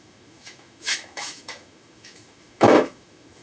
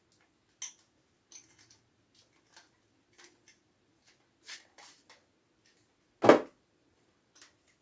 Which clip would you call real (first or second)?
second